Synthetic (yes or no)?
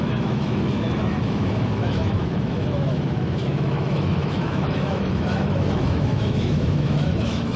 yes